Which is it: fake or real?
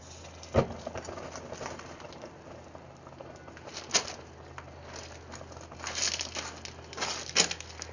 real